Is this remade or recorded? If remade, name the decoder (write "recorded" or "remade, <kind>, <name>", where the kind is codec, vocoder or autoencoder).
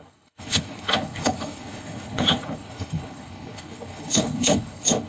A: remade, codec, HILCodec